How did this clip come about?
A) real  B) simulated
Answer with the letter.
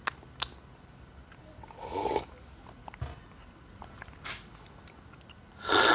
A